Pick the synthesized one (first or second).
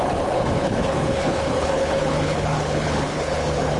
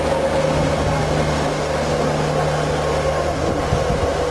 first